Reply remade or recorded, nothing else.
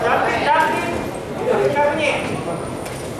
recorded